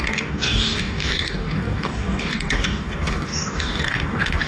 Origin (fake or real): fake